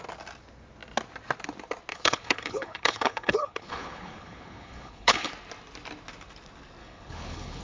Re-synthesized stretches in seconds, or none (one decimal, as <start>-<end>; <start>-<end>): 1.9-5.3; 6.8-7.6